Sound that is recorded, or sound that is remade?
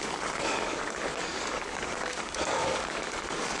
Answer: remade